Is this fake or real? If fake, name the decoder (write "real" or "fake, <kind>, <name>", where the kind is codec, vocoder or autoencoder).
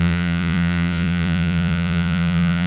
fake, vocoder, Vocos